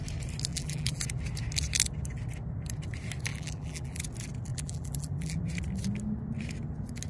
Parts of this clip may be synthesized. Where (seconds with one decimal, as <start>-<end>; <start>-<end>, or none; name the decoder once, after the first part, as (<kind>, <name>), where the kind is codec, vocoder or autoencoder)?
0.5-1.0 (vocoder, BigVGAN v2); 3.3-4.0; 4.5-5.4